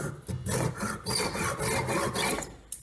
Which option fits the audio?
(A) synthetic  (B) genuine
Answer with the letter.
B